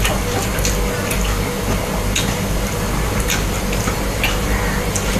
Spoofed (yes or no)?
no